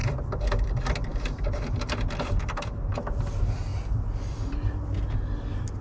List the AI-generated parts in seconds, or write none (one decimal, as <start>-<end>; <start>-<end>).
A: 0.0-0.7; 1.1-2.9